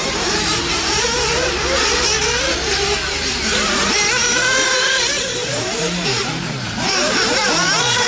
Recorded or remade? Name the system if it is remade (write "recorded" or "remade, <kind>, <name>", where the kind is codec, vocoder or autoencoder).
remade, vocoder, BigVGAN v2